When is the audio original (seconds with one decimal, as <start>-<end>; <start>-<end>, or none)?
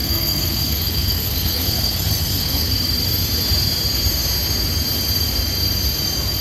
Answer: 2.7-6.4